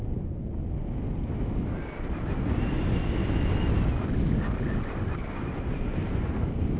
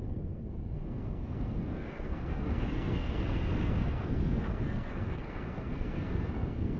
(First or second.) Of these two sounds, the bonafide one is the first